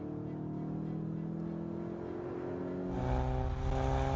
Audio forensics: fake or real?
real